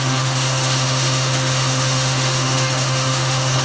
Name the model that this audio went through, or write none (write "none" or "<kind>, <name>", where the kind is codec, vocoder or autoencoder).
autoencoder, DAC-VAE